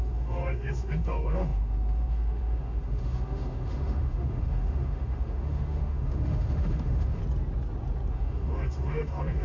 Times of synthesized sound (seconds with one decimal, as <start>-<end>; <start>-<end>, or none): 0.0-7.2; 8.1-9.4